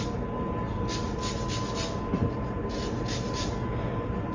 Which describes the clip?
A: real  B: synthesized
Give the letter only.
A